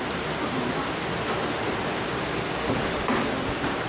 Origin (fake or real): real